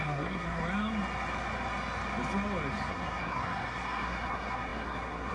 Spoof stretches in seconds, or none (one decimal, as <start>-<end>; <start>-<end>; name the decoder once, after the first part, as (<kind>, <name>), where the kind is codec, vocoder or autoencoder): 0.0-0.6 (codec, SNAC); 2.9-5.3